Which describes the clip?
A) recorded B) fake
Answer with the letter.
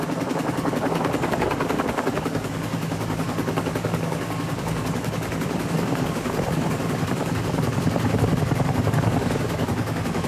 B